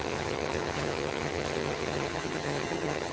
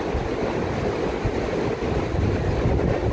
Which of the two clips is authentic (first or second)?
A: second